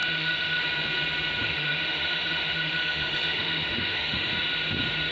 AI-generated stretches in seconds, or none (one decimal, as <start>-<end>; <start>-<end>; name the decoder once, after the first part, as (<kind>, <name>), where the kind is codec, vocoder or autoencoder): 0.0-0.6 (autoencoder, DAC-VAE); 1.4-4.3

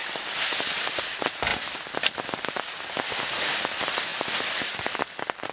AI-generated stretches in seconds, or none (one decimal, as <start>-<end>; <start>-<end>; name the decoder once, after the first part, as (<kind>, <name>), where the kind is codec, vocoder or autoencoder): none